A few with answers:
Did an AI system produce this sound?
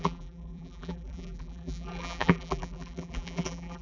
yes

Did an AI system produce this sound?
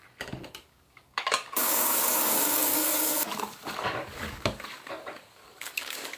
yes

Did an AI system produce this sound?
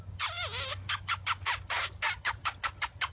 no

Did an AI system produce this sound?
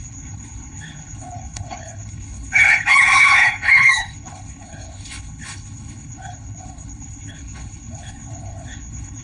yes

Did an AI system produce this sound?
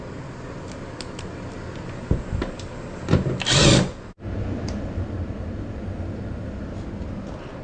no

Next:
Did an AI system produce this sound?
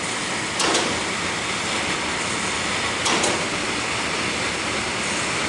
no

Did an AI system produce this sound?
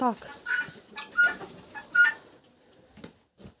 no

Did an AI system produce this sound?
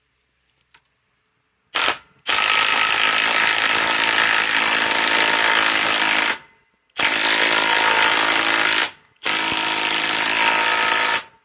no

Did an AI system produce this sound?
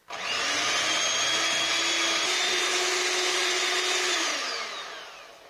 no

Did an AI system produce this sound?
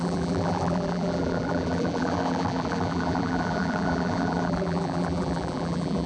yes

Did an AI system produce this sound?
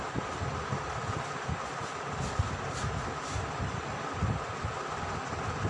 no